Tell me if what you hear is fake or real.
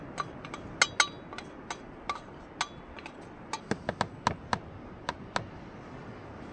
real